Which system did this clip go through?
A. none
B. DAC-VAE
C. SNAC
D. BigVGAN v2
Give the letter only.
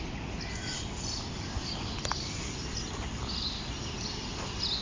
A